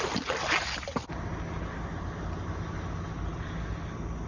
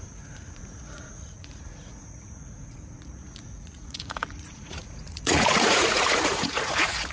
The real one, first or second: first